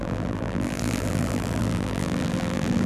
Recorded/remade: remade